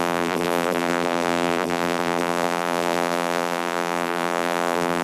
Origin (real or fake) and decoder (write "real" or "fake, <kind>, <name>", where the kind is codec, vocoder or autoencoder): fake, vocoder, BigVGAN v2